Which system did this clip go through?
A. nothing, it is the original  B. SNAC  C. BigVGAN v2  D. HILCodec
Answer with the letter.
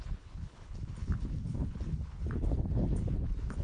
D